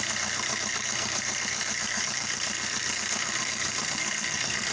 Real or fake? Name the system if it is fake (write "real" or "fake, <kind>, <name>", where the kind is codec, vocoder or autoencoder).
fake, codec, SNAC